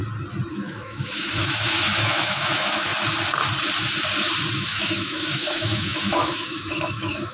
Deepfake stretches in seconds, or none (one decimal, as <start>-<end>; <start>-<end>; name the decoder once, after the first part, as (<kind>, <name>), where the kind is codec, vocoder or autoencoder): 0.5-2.9 (autoencoder, DAC-VAE); 4.5-7.3